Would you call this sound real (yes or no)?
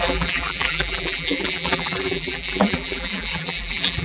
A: no